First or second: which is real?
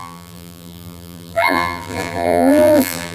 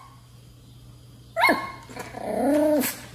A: second